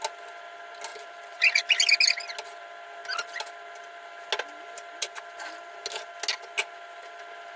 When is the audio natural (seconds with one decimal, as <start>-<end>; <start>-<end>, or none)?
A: 0.0-0.9; 1.6-7.6